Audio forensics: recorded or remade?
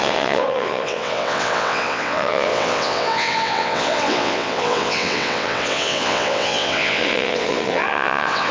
remade